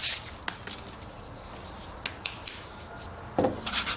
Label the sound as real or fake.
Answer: real